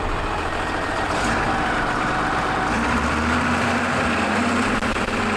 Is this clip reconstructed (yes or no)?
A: yes